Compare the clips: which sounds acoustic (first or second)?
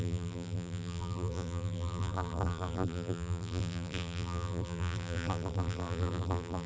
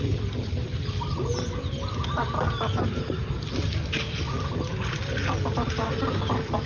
second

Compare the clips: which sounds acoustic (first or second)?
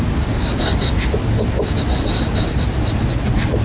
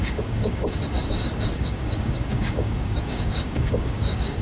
first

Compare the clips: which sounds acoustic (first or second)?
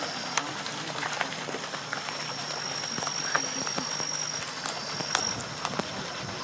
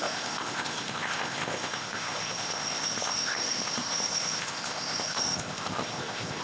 first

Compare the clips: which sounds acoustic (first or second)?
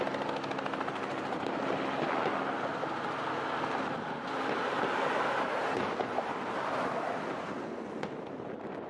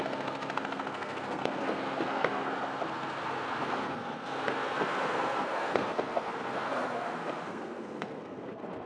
first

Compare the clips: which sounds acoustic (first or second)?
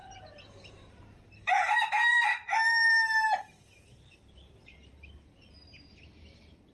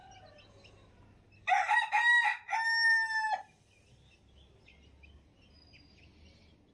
second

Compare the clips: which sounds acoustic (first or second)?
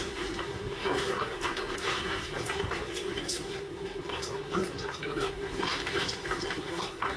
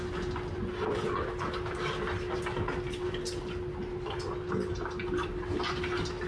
second